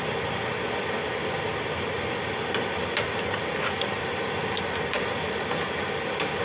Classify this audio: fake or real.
real